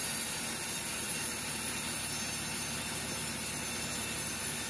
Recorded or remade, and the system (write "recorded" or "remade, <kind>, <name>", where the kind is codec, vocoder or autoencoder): recorded